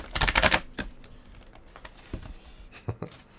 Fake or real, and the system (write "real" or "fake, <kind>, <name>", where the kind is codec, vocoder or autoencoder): real